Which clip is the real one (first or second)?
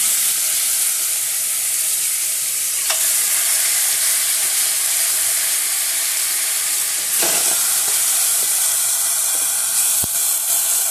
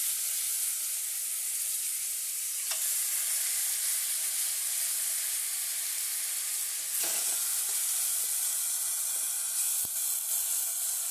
second